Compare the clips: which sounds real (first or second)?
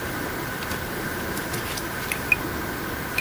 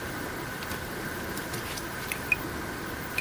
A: first